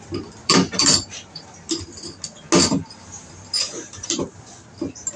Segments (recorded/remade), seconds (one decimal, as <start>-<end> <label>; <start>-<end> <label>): 0.0-0.4 recorded; 0.4-1.8 remade; 1.8-3.6 recorded; 3.6-4.4 remade; 4.4-5.2 recorded